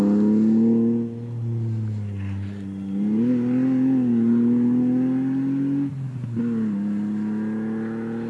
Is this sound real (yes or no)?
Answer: yes